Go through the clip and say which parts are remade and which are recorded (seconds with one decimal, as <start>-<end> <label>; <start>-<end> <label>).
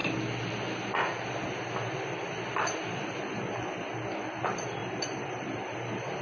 0.0-4.8 recorded; 4.8-6.2 remade